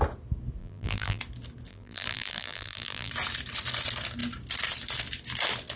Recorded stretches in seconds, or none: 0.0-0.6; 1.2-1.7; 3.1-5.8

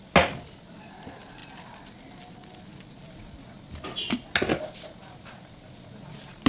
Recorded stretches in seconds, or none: 0.0-6.5

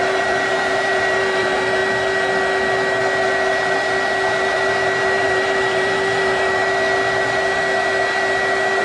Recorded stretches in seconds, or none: 1.8-4.3; 6.6-8.8

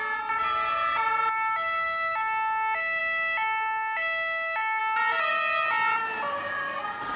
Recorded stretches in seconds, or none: 0.0-7.2

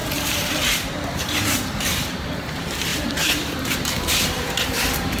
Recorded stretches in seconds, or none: none

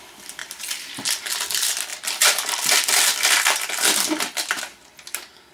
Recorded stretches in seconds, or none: 0.0-0.4; 1.0-1.9; 4.6-5.5

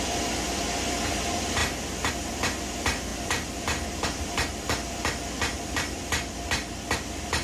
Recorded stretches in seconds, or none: 1.6-2.1